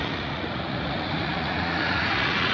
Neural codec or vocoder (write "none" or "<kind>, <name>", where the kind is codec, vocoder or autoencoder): vocoder, Vocos